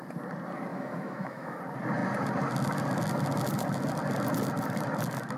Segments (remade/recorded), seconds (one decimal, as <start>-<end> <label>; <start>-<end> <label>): 0.0-0.7 recorded; 0.7-1.6 remade; 1.6-5.4 recorded